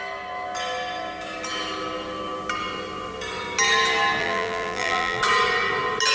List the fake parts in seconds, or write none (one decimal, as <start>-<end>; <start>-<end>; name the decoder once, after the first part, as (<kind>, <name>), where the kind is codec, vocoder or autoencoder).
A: 4.2-5.2 (vocoder, BigVGAN v2)